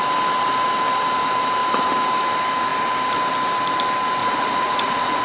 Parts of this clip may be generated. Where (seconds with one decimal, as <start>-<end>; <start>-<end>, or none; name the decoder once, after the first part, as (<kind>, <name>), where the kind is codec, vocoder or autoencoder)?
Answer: 4.2-5.2 (vocoder, Vocos)